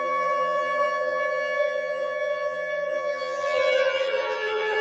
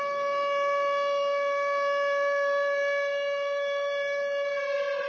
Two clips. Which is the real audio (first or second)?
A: second